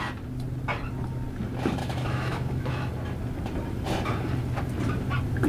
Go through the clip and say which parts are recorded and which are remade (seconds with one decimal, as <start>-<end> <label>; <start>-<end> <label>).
0.0-1.8 recorded; 1.8-2.9 remade; 2.9-5.5 recorded